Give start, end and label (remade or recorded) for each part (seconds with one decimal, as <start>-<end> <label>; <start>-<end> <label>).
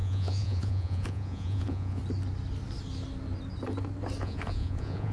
0.0-2.0 remade; 2.0-4.2 recorded; 4.2-5.1 remade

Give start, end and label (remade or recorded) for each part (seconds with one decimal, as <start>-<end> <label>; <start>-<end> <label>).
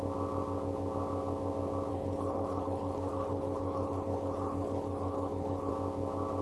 0.0-1.9 recorded; 1.9-5.7 remade; 5.7-6.4 recorded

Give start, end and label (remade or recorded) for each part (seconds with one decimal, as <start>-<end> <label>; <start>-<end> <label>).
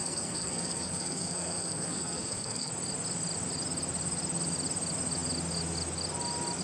0.0-2.7 remade; 2.7-6.6 recorded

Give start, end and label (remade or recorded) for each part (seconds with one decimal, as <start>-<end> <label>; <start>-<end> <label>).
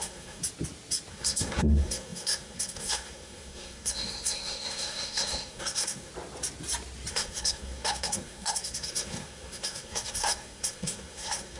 0.0-0.4 remade; 0.4-1.1 recorded; 1.1-6.1 remade; 6.1-7.1 recorded; 7.1-11.6 remade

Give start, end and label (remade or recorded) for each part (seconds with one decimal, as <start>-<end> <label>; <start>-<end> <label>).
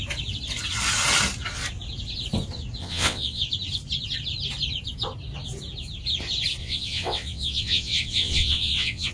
0.0-2.8 recorded; 2.8-3.4 remade; 3.4-6.6 recorded; 6.6-9.1 remade